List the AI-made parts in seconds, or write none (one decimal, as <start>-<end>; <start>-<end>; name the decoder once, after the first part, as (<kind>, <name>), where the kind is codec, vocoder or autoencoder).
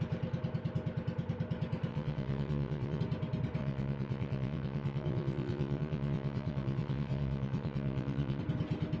1.9-3.0 (vocoder, WaveNeXt); 3.6-8.4